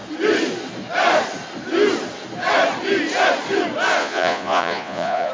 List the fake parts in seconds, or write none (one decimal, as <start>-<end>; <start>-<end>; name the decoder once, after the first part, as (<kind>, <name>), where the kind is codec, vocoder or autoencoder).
4.0-5.3 (vocoder, Vocos)